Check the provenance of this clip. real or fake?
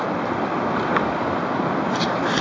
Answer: real